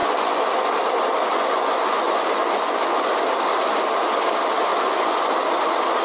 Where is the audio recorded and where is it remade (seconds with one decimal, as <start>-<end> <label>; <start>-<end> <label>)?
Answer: 0.0-0.7 remade; 0.7-1.3 recorded; 1.3-3.1 remade; 3.1-4.7 recorded; 4.7-5.3 remade; 5.3-6.0 recorded

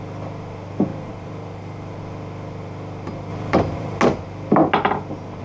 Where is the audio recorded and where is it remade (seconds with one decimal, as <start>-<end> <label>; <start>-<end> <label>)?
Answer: 0.0-0.9 recorded; 0.9-2.0 remade; 2.0-3.3 recorded; 3.3-4.0 remade; 4.0-5.4 recorded

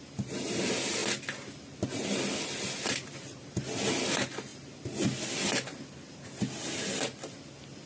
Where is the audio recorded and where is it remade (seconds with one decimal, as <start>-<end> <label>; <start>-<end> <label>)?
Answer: 0.0-7.9 recorded

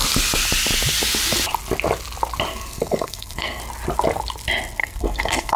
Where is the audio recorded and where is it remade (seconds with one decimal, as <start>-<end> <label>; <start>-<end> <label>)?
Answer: 0.0-2.5 recorded; 2.5-3.6 remade; 3.6-4.8 recorded; 4.8-5.6 remade